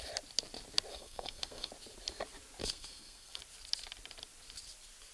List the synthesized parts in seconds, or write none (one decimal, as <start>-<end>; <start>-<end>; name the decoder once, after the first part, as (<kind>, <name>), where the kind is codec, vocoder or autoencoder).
0.9-1.7 (codec, SNAC); 2.6-3.4